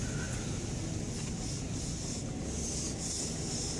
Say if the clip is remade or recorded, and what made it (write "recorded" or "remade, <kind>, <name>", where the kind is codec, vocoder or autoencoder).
remade, vocoder, BigVGAN v2